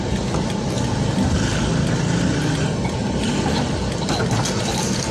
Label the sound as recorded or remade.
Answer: recorded